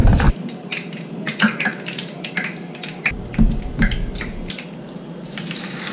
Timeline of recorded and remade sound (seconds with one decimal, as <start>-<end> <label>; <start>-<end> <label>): 0.0-5.9 recorded